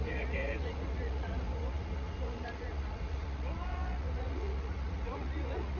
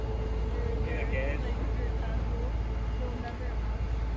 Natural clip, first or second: second